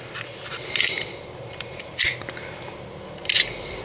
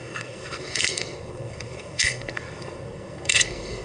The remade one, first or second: second